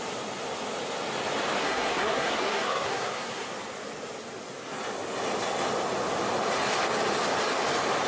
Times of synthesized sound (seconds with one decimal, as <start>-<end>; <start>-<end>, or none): 1.6-3.5